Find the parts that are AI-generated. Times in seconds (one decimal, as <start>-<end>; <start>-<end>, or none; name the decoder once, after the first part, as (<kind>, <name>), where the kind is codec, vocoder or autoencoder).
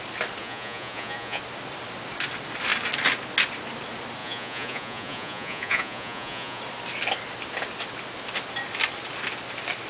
0.4-1.4 (vocoder, Vocos); 4.2-6.6